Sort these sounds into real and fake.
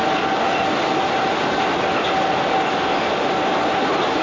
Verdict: real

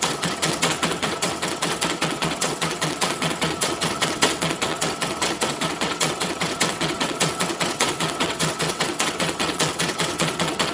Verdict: fake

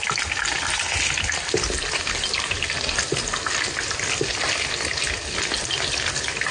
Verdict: real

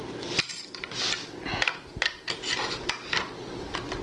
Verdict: real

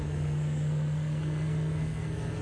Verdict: fake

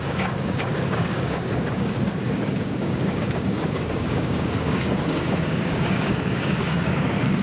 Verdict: fake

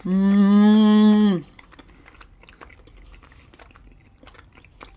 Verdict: real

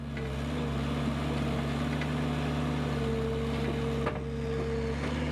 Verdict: real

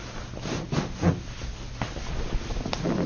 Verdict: real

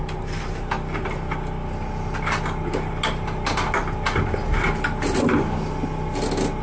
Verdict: real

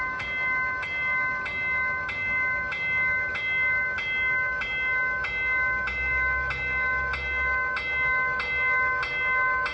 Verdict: real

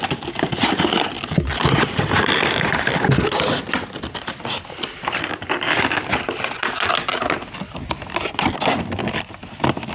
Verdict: fake